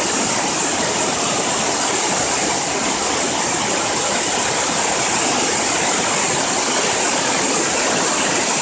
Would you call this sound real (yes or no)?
yes